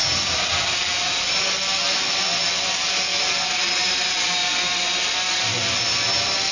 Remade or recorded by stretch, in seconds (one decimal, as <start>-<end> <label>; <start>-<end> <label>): 0.0-6.5 recorded